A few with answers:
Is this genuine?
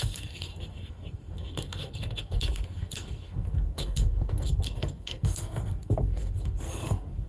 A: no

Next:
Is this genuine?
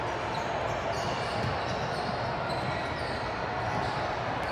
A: yes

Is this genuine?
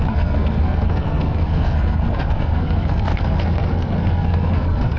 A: no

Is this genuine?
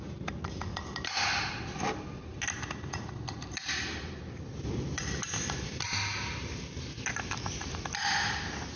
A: yes